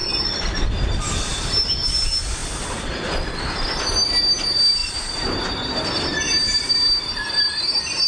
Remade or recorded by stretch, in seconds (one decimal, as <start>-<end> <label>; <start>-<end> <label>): 0.0-2.4 remade; 2.4-3.0 recorded; 3.0-8.1 remade